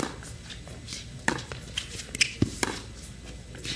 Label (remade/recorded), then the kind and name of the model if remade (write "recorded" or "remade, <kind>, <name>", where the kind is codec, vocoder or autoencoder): remade, vocoder, BigVGAN v2